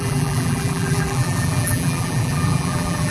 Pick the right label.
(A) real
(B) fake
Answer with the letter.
B